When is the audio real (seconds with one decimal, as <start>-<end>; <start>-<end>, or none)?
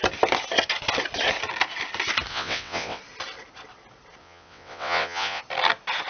0.0-2.3; 3.0-4.2; 5.4-6.1